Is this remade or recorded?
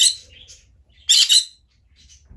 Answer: recorded